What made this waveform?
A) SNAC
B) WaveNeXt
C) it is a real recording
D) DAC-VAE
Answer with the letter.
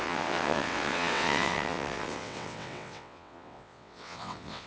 B